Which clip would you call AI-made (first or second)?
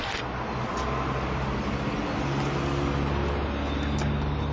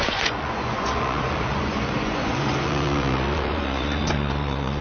second